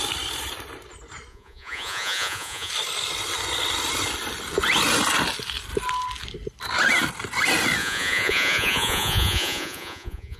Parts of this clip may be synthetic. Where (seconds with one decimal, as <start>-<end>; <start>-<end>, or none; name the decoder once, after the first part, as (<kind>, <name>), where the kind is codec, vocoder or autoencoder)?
1.3-2.7 (vocoder, Vocos); 7.8-10.4